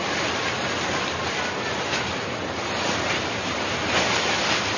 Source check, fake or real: real